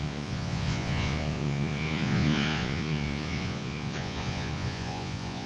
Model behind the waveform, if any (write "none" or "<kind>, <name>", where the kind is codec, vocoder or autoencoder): vocoder, Vocos